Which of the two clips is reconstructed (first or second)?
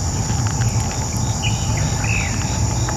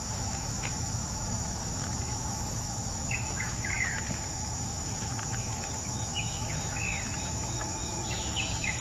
second